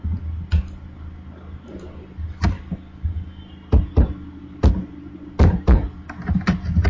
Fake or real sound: real